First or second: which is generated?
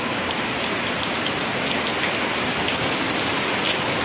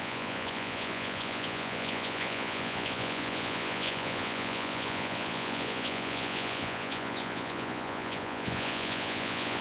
second